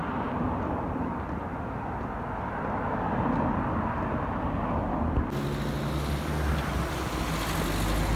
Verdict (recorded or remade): recorded